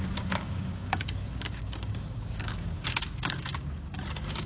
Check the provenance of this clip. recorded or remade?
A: remade